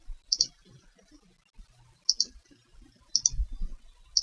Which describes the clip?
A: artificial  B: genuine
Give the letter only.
B